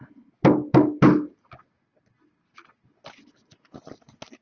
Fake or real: real